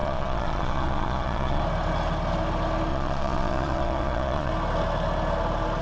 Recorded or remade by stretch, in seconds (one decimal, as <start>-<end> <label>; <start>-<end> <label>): 0.0-1.6 remade; 1.6-2.9 recorded; 2.9-4.5 remade; 4.5-5.8 recorded